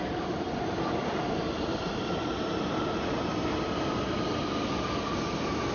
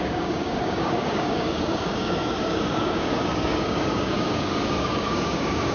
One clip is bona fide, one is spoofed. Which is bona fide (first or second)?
first